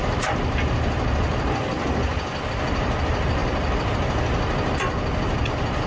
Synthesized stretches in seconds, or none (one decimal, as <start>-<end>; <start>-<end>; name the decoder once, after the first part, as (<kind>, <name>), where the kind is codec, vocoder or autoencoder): 0.0-3.0 (vocoder, BigVGAN v2); 3.4-3.9